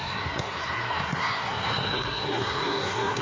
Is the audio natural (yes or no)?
no